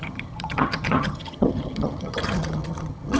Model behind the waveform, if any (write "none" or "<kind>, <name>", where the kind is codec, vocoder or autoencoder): vocoder, HiFi-GAN